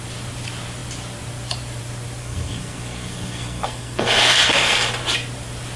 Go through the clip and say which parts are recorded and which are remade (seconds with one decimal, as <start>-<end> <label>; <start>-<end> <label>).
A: 0.0-2.2 recorded; 2.2-4.9 remade; 4.9-5.8 recorded